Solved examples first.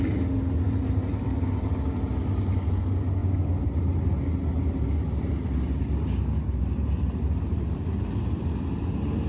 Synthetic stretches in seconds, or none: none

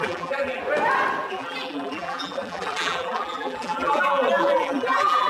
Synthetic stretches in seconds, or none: 0.0-0.6 (vocoder, BigVGAN v2); 1.3-5.3

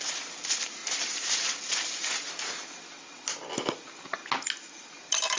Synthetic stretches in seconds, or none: 0.0-0.8 (vocoder, BigVGAN v2); 3.7-4.2

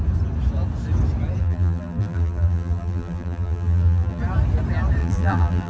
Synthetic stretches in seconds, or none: 1.4-4.2 (vocoder, BigVGAN v2); 5.0-5.7

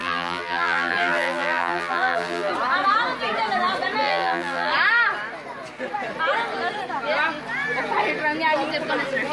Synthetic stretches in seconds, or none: 0.0-2.5 (vocoder, BigVGAN v2); 4.0-4.7